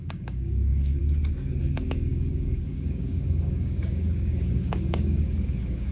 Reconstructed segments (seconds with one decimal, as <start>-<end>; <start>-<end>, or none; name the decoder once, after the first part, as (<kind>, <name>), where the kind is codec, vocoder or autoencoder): 0.0-1.0 (codec, DAC); 1.6-5.9